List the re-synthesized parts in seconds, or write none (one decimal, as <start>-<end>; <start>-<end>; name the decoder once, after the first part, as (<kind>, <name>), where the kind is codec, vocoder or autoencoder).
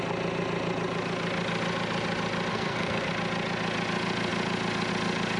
2.5-3.1 (codec, SNAC)